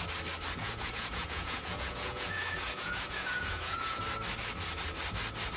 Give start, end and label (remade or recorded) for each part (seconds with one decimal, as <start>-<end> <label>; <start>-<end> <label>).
0.0-0.6 recorded; 0.6-4.0 remade; 4.0-5.6 recorded